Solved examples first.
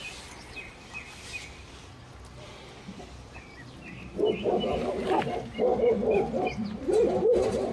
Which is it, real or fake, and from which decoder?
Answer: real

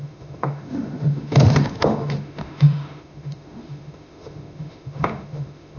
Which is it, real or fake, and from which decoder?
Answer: fake, autoencoder, DAC-VAE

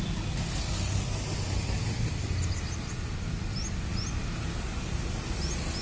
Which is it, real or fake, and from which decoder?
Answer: real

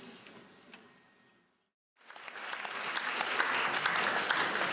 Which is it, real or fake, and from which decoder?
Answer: real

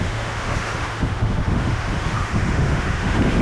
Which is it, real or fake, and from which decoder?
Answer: fake, autoencoder, DAC-VAE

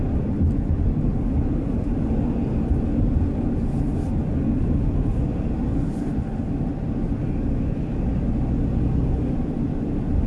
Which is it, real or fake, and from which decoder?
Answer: real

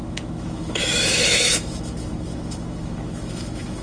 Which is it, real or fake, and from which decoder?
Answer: fake, autoencoder, DAC-VAE